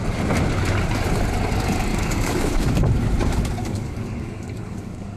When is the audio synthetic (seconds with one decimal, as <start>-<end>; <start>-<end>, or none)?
1.9-2.7; 3.6-5.2